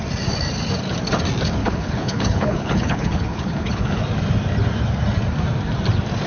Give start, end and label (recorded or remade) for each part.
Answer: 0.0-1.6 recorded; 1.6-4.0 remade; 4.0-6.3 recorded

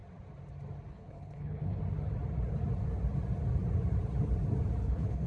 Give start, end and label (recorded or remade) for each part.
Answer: 0.0-0.9 recorded; 0.9-1.8 remade; 1.8-4.8 recorded; 4.8-5.3 remade

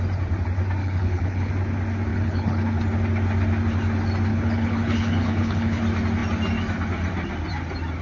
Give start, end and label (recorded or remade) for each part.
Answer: 0.0-0.8 recorded; 0.8-1.5 remade; 1.5-2.1 recorded; 2.1-2.8 remade; 2.8-4.3 recorded; 4.3-5.8 remade; 5.8-8.0 recorded